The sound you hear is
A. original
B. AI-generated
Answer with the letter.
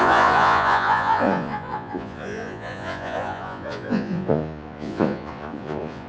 B